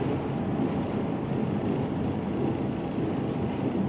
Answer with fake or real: real